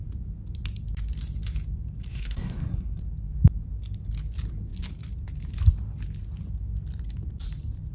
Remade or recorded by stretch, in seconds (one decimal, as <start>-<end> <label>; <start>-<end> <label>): 0.0-2.1 recorded; 2.1-3.0 remade; 3.0-7.9 recorded